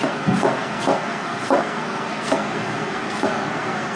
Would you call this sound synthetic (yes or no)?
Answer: yes